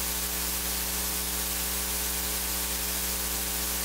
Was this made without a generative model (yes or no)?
yes